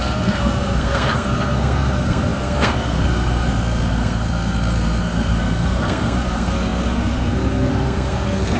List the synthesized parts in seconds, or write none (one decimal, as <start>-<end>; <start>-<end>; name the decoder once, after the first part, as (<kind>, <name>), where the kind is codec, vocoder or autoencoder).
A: 0.0-8.6 (codec, SNAC)